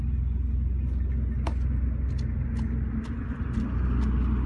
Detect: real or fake real